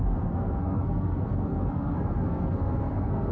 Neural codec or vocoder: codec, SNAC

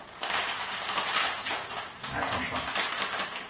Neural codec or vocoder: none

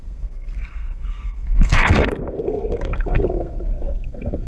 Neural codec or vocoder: codec, SNAC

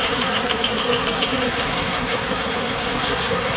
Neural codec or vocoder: codec, SNAC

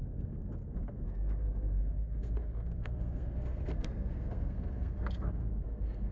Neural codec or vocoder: codec, SNAC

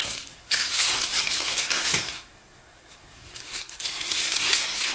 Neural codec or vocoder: codec, SNAC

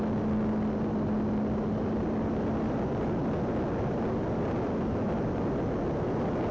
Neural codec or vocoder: none